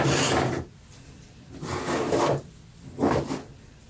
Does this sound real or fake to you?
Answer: real